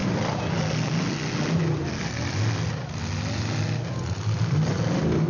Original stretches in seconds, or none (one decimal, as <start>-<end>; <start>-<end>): 0.6-5.3